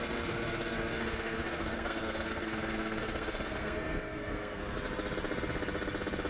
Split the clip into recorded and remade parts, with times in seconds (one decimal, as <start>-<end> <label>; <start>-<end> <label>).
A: 0.0-4.6 remade; 4.6-6.3 recorded